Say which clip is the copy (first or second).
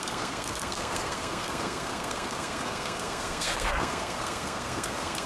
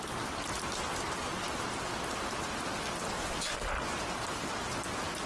first